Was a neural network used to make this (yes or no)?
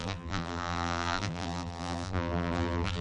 yes